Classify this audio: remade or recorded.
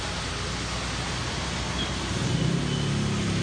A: recorded